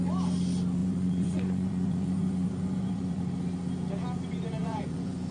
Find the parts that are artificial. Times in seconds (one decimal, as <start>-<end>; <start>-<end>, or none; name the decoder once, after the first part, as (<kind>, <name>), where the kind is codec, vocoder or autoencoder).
0.8-3.2 (vocoder, Vocos); 4.6-5.3